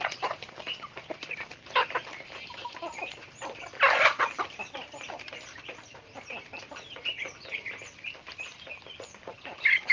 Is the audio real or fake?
fake